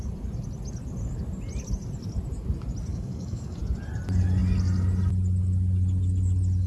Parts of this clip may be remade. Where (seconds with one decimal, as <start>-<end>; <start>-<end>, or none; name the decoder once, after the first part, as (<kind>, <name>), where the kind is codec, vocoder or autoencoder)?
2.9-3.6 (codec, DAC)